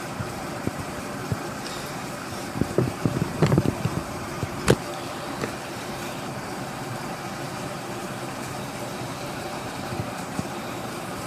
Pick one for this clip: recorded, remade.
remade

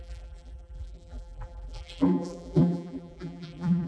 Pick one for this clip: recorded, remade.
remade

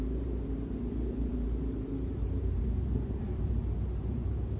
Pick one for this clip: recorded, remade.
remade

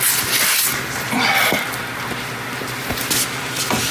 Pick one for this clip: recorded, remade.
recorded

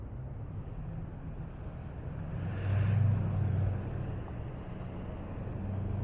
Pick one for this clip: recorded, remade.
recorded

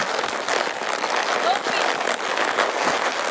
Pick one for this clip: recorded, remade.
recorded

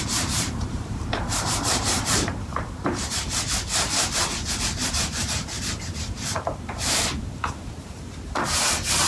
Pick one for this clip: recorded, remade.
remade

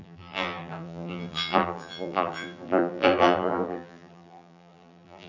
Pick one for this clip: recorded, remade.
remade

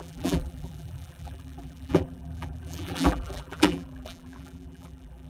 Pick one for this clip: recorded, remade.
remade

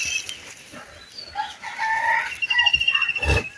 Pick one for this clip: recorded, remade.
recorded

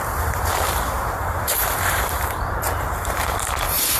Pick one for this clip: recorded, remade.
remade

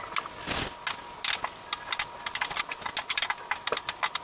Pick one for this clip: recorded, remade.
recorded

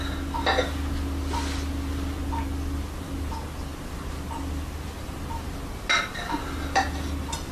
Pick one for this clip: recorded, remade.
recorded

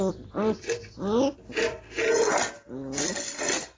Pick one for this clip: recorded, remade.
remade